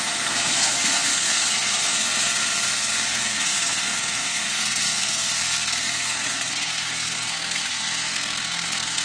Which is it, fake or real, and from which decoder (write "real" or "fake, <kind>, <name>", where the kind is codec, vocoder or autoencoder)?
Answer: fake, codec, SNAC